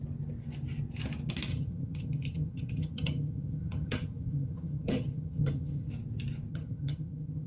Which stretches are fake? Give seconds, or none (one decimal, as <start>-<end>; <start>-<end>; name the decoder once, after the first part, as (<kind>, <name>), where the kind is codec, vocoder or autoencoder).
1.5-5.9 (vocoder, HiFi-GAN); 6.5-7.5